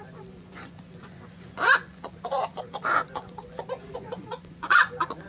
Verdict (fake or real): fake